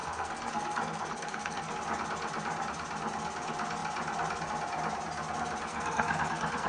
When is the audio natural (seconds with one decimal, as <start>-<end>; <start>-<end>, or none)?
1.7-5.7